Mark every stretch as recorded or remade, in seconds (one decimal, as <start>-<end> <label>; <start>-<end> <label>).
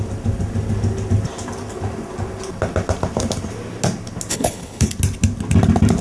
0.0-4.3 recorded; 4.3-4.9 remade; 4.9-6.0 recorded